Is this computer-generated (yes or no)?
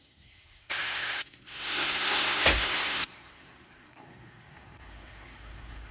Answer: yes